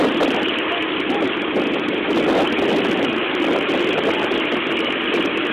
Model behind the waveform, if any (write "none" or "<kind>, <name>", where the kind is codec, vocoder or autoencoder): none